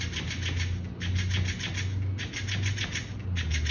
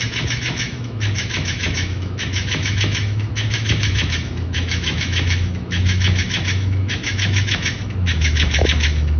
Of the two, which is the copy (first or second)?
second